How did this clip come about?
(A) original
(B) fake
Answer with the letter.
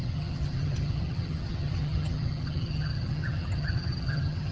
B